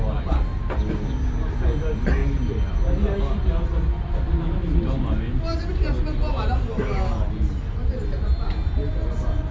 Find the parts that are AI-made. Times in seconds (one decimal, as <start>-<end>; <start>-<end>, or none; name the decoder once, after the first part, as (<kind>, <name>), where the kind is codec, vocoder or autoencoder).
none